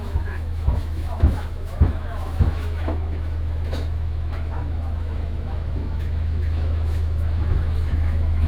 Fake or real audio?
fake